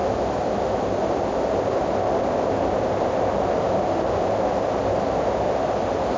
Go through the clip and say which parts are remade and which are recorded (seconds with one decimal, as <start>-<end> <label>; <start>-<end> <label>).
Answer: 0.0-6.2 recorded